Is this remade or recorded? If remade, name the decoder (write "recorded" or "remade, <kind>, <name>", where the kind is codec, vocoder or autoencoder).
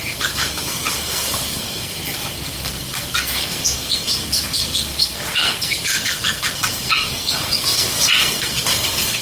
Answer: remade, codec, SNAC